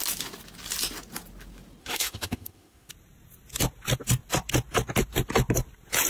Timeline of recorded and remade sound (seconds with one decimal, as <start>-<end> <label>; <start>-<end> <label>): 0.0-1.8 recorded; 1.8-2.9 remade; 2.9-6.1 recorded